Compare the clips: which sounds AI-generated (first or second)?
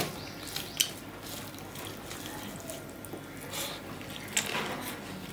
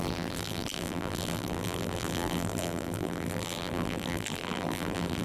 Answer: second